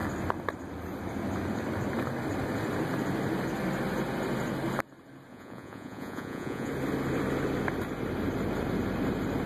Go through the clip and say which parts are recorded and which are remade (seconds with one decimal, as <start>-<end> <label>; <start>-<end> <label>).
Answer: 0.0-5.3 recorded; 5.3-6.7 remade; 6.7-9.5 recorded